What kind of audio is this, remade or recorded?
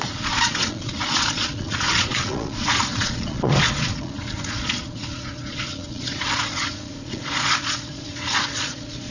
remade